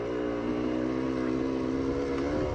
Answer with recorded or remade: recorded